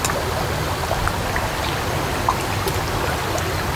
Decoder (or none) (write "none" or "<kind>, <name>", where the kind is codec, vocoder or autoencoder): none